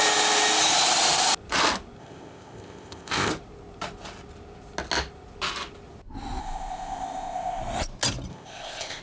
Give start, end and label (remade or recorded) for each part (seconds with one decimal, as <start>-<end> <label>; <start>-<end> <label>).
0.0-2.0 recorded; 2.0-3.3 remade; 3.3-6.4 recorded; 6.4-7.6 remade; 7.6-8.3 recorded; 8.3-9.0 remade